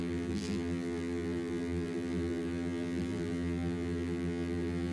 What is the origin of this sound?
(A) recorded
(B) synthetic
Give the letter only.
B